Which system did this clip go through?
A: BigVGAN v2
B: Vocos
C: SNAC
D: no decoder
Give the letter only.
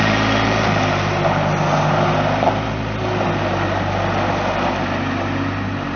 D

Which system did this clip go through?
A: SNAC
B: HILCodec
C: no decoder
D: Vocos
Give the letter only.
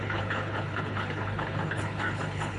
B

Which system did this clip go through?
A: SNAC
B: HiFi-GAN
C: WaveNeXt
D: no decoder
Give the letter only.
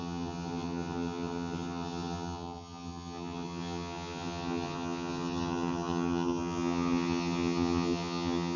B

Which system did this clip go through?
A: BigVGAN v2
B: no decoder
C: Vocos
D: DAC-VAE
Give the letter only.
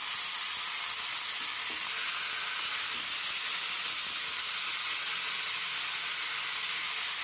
B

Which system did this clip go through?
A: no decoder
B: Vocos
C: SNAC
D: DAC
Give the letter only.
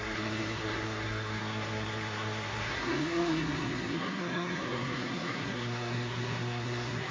C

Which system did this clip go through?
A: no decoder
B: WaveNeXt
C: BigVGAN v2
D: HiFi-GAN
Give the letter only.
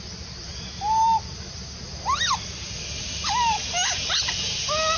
A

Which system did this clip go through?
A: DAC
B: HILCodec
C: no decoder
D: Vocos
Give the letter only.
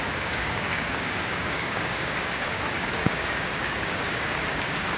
A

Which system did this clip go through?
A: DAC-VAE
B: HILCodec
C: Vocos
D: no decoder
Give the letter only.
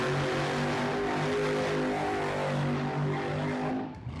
D